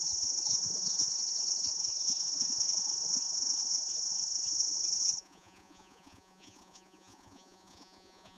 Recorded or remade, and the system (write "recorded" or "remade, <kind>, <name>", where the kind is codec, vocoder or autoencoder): remade, vocoder, Vocos